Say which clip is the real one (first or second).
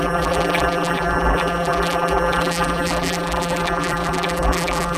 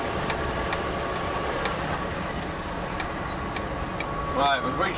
second